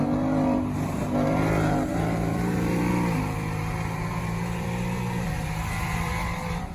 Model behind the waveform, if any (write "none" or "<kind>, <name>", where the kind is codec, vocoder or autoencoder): vocoder, BigVGAN v2